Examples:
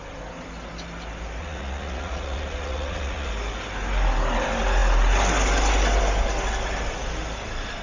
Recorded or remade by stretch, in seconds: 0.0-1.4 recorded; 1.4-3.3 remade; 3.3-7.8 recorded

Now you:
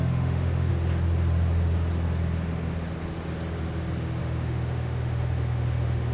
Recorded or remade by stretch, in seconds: 0.0-0.7 remade; 0.7-4.2 recorded; 4.2-6.1 remade

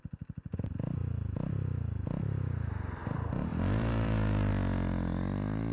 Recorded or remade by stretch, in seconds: 0.0-3.5 recorded; 3.5-4.5 remade; 4.5-5.7 recorded

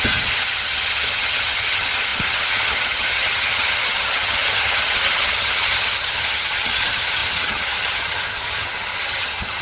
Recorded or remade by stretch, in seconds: 0.0-9.6 remade

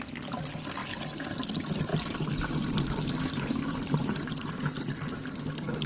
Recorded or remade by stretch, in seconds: 0.0-1.9 recorded; 1.9-5.4 remade; 5.4-5.9 recorded

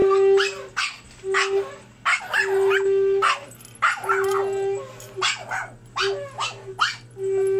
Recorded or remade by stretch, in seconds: 0.0-7.6 recorded